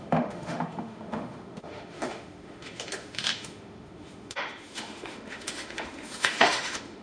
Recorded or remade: remade